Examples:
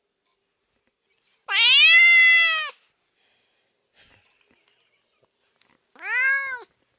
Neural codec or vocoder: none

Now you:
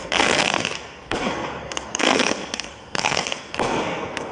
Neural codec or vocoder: codec, SNAC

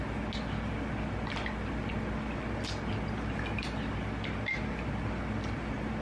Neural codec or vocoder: none